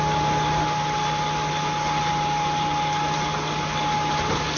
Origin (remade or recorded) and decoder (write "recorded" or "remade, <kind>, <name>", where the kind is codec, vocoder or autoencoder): recorded